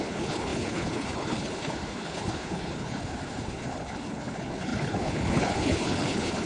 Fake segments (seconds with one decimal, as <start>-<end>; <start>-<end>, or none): 0.0-6.5